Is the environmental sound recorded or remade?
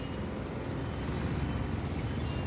recorded